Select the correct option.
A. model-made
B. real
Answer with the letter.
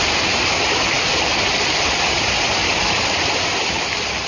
A